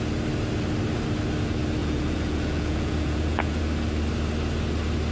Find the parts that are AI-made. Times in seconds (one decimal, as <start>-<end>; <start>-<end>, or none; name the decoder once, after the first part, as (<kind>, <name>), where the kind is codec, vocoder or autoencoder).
1.8-3.6 (vocoder, Vocos)